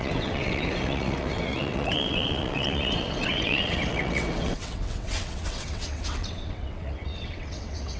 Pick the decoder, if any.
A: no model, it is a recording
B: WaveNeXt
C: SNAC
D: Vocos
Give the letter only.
B